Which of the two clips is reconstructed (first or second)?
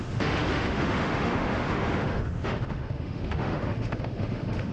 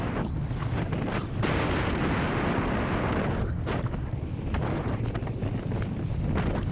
first